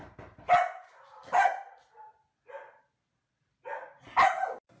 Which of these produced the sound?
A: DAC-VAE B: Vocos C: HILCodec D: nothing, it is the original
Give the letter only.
D